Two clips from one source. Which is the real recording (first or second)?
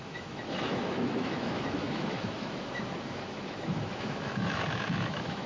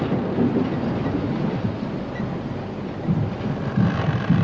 second